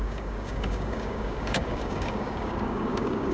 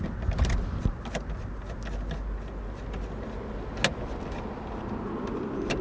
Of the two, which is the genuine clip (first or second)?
second